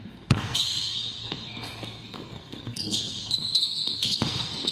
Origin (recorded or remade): remade